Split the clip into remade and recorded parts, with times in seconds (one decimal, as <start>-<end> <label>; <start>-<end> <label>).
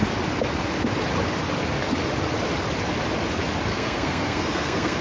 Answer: 0.0-3.7 recorded; 3.7-5.0 remade